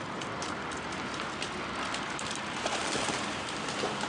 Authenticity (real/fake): real